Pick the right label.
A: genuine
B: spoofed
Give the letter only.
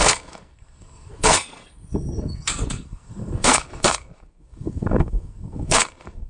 B